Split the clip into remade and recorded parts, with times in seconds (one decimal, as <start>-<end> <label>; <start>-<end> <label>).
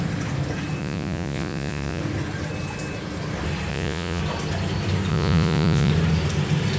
0.0-0.8 recorded; 0.8-2.0 remade; 2.0-3.7 recorded; 3.7-4.2 remade; 4.2-5.1 recorded; 5.1-5.9 remade; 5.9-6.8 recorded